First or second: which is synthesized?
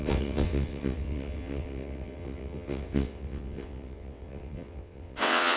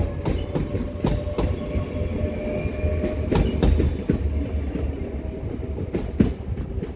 first